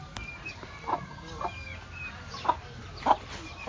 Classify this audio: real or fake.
real